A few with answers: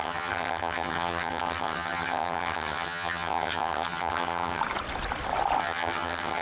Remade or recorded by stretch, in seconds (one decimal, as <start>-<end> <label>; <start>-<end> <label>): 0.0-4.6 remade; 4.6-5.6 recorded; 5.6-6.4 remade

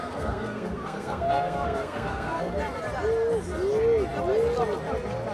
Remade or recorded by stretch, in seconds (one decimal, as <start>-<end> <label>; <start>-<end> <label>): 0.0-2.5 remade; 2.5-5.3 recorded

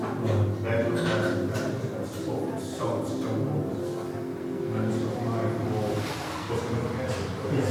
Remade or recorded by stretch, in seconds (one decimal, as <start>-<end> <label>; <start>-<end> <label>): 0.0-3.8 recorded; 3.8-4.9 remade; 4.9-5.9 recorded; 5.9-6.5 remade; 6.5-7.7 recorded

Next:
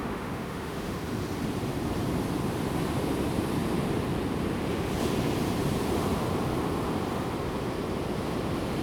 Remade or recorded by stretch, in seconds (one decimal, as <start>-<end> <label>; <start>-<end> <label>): 0.0-1.0 remade; 1.0-8.8 recorded